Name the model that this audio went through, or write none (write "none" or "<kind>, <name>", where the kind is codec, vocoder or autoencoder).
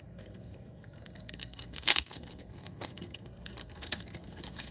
codec, SNAC